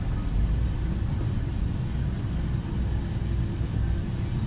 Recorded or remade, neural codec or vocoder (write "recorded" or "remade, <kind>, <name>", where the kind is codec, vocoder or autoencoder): recorded